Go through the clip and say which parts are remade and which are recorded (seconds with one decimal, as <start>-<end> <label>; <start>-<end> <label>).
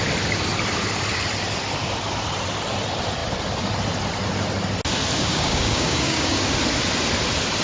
0.0-5.2 recorded; 5.2-6.4 remade; 6.4-7.6 recorded